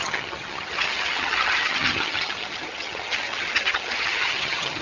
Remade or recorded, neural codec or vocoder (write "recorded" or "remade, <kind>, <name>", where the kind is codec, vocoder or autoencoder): remade, vocoder, HiFi-GAN